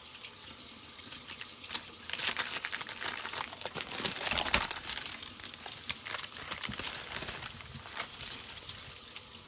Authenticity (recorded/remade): remade